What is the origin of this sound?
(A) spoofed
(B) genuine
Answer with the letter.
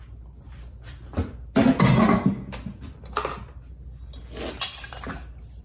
B